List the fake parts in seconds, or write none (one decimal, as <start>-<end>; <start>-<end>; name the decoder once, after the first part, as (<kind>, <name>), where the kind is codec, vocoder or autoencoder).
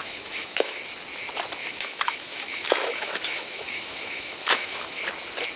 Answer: 0.0-0.8 (autoencoder, DAC-VAE); 1.6-5.0